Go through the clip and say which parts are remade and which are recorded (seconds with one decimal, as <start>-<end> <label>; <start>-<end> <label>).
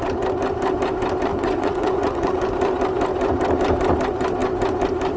0.0-1.3 recorded; 1.3-2.4 remade; 2.4-5.2 recorded